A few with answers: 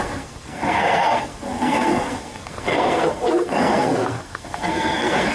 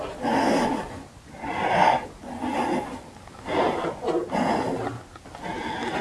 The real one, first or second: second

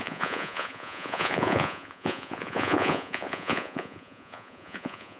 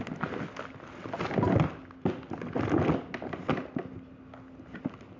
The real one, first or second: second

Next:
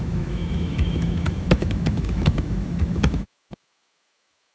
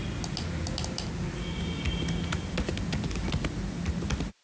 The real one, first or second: second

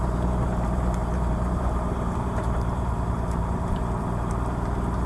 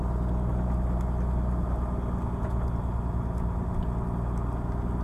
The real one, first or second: second